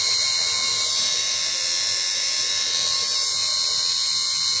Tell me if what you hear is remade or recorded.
remade